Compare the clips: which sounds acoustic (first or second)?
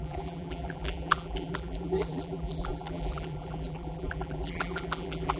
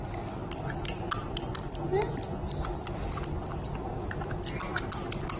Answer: second